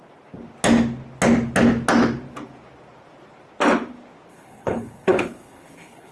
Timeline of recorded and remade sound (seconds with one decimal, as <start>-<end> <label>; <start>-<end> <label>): 0.0-4.3 recorded; 4.3-6.1 remade